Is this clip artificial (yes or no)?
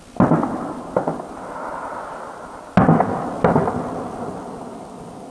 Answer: no